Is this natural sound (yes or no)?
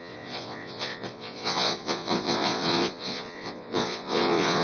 no